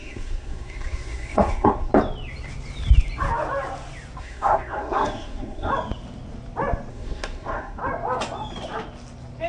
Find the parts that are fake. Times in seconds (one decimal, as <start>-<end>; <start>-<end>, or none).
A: 0.0-1.9; 4.2-5.7; 6.9-7.8